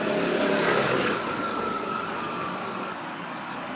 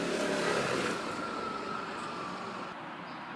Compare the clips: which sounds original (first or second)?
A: second